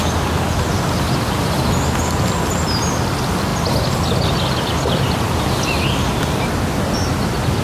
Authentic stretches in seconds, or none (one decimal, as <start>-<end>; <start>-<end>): 0.0-7.6